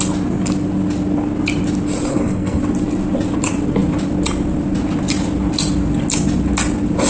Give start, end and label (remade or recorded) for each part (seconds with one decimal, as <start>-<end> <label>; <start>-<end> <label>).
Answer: 0.0-2.1 recorded; 2.1-2.6 remade; 2.6-7.1 recorded